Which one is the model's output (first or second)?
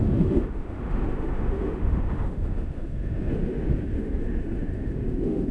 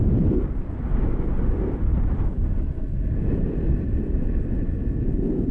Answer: first